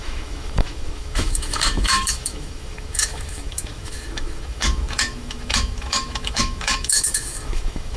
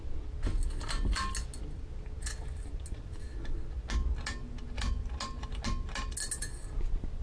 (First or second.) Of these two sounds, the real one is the second